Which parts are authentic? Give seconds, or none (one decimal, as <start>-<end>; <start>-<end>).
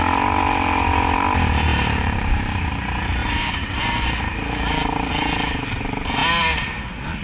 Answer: 0.0-1.7; 2.7-3.2; 5.1-7.2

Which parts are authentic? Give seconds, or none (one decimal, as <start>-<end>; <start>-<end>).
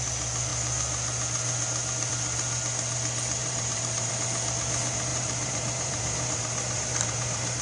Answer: 0.0-3.4; 4.1-5.1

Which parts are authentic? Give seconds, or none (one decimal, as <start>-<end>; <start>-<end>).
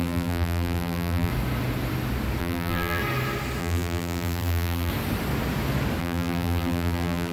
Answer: 1.3-2.4; 3.0-3.6; 4.9-6.0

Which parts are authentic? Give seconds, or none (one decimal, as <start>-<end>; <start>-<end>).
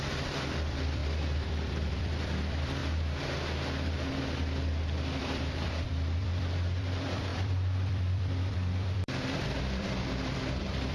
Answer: 2.8-5.2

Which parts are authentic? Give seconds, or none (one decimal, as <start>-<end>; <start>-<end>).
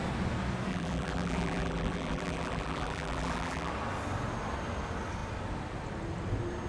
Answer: 0.0-0.7; 3.7-6.7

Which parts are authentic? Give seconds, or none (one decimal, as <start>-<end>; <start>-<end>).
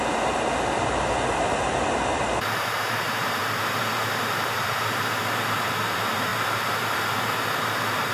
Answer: none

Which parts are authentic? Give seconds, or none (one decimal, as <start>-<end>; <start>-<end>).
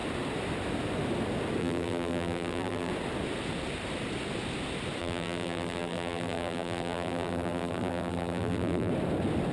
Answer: 0.0-1.6; 2.9-5.0; 8.9-9.5